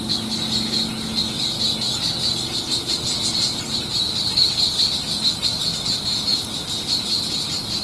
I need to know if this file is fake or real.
real